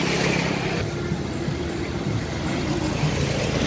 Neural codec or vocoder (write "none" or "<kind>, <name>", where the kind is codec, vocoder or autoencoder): none